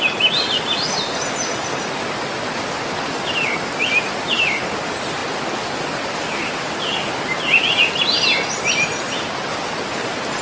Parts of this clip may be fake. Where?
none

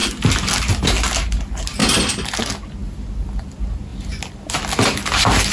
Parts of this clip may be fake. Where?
none

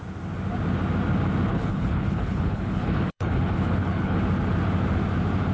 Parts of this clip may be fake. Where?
1.5-4.2 (codec, HILCodec)